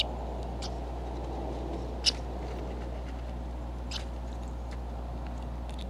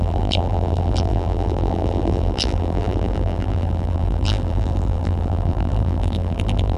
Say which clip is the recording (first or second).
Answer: first